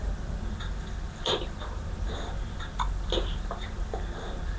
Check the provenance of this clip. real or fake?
fake